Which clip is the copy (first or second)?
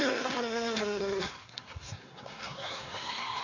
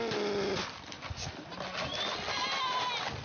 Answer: first